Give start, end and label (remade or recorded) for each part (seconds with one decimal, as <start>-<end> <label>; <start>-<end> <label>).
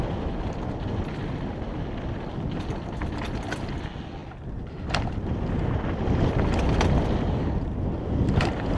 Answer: 0.0-8.8 recorded